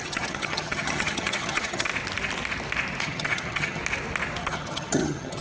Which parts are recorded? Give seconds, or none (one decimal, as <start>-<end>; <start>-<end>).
1.9-3.0; 3.8-4.4